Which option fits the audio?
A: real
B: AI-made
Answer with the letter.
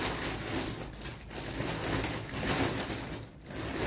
A